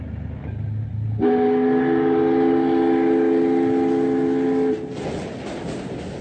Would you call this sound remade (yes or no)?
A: no